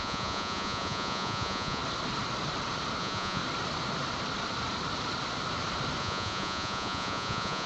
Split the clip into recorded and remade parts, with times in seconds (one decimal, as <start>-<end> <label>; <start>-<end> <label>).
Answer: 0.0-1.8 remade; 1.8-3.0 recorded; 3.0-3.4 remade; 3.4-6.0 recorded; 6.0-7.7 remade